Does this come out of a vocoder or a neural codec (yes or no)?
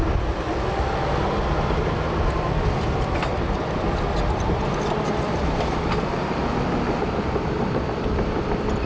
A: no